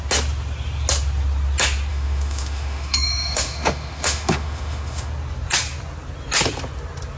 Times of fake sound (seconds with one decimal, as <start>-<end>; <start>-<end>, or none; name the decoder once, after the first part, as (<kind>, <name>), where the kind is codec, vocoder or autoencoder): 1.9-5.1 (autoencoder, DAC-VAE)